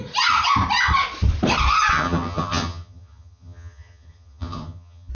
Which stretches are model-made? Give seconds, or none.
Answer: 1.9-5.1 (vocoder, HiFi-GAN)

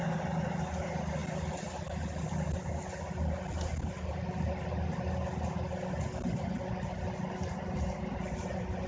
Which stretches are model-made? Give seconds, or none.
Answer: none

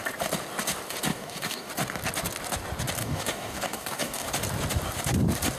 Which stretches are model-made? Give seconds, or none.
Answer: 1.1-1.7 (codec, DAC); 3.0-4.3

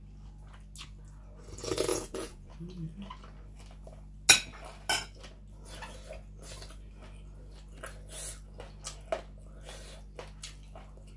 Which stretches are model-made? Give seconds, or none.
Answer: 1.9-2.5 (vocoder, Vocos)

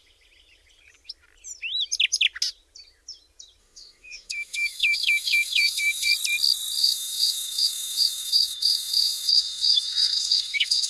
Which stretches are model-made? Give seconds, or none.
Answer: 3.6-6.1 (autoencoder, DAC-VAE); 6.8-10.9

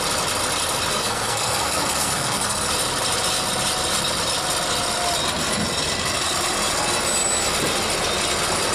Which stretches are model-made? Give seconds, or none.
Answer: 0.9-2.7 (codec, SNAC)

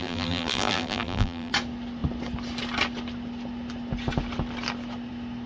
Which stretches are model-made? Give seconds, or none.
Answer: 0.0-1.5 (vocoder, BigVGAN v2)